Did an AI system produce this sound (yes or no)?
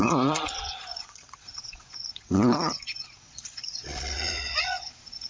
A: yes